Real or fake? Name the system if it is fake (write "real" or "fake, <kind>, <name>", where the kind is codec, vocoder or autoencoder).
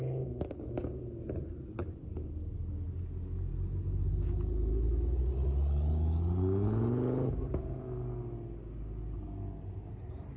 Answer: real